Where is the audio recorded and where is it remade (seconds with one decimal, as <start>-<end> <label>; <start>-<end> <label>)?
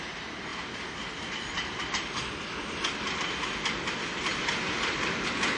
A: 0.0-5.6 recorded